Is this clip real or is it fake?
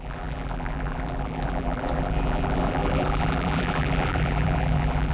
fake